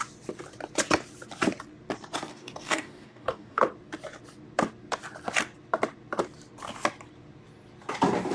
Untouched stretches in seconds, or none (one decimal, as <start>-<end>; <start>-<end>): 0.0-2.3; 3.6-8.3